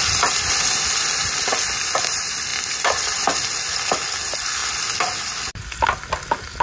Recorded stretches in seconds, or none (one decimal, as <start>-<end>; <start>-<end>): 0.0-2.5; 3.0-6.6